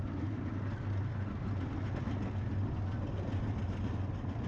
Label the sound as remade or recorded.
recorded